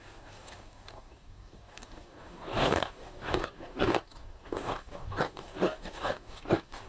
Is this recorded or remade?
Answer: remade